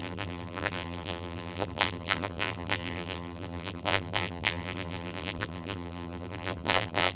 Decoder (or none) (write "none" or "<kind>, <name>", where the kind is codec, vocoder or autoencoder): vocoder, BigVGAN v2